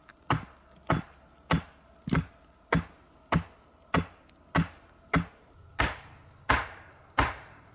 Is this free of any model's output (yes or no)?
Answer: yes